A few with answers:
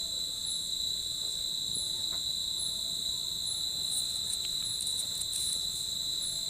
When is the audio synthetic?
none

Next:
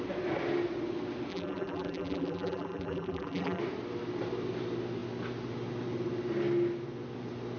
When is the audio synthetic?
1.3-3.6 (vocoder, BigVGAN v2)

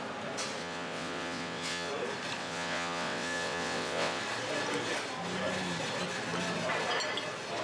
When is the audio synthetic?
0.6-1.9 (vocoder, WaveNeXt); 2.4-4.2

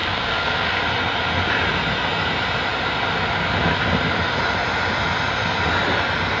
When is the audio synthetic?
0.0-0.8 (codec, SNAC)

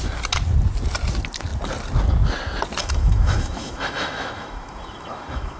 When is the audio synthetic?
2.8-5.6 (autoencoder, DAC-VAE)

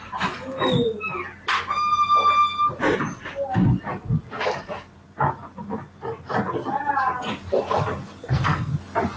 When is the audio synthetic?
8.2-8.7 (codec, SNAC)